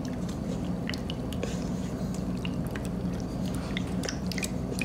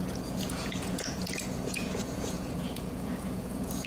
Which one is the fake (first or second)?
second